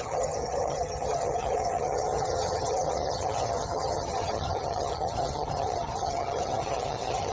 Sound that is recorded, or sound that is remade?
remade